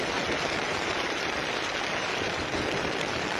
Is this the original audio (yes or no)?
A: no